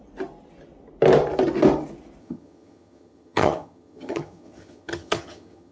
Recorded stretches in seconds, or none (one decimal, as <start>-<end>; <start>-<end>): 0.0-2.2